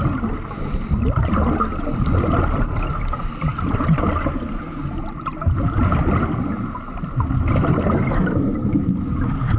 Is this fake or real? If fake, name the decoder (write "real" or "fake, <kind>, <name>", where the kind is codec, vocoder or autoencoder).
real